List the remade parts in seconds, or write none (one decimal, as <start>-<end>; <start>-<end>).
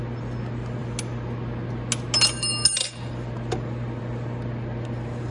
none